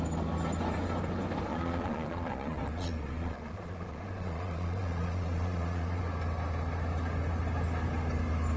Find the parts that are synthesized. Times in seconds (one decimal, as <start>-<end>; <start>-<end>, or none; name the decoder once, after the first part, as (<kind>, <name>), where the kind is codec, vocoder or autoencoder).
1.5-6.0 (vocoder, Vocos)